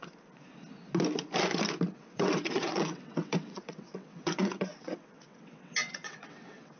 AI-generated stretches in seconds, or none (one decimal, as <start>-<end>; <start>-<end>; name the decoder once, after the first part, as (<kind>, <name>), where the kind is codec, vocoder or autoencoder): 1.9-6.8 (vocoder, WaveNeXt)